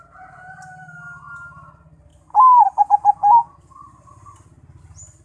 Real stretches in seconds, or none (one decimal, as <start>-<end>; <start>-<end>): 0.0-5.2